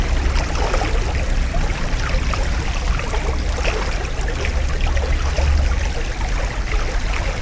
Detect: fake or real real